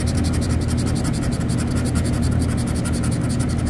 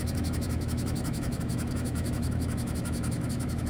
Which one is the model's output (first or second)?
second